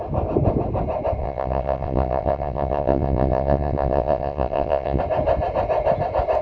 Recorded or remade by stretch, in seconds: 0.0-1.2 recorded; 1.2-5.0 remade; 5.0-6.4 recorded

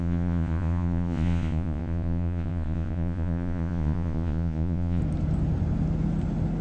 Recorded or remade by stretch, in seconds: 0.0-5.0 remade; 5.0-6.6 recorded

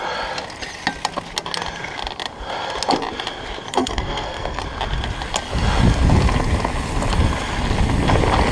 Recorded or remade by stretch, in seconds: 0.0-3.7 recorded; 3.7-4.6 remade; 4.6-8.5 recorded